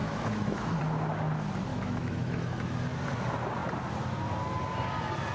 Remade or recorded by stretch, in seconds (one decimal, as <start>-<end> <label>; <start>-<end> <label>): 0.0-0.8 remade; 0.8-1.7 recorded; 1.7-2.7 remade; 2.7-5.3 recorded